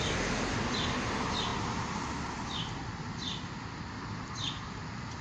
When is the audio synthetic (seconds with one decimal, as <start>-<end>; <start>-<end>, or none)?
none